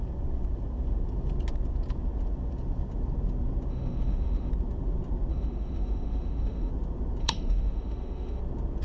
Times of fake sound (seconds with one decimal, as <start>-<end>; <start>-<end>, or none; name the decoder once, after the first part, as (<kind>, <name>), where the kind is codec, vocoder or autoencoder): 3.7-4.5 (autoencoder, DAC-VAE); 5.3-6.7; 7.2-8.4